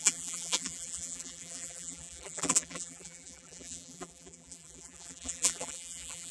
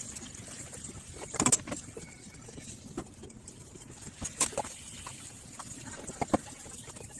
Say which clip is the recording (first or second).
second